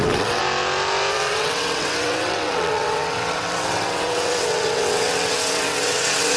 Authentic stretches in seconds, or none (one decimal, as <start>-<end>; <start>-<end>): 0.4-1.1